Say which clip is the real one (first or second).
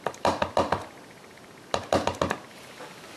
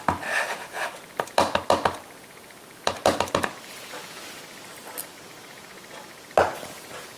second